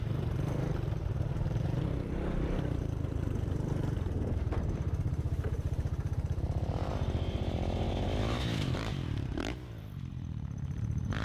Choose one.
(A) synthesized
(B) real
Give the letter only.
A